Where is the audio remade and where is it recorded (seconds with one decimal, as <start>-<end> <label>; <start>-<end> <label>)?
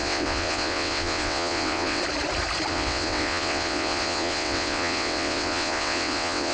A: 0.0-2.0 remade; 2.0-2.7 recorded; 2.7-6.5 remade